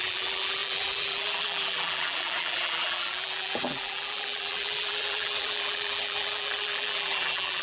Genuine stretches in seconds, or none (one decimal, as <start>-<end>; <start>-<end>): none